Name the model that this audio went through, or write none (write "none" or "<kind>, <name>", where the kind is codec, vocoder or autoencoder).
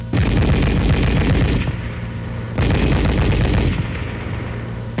none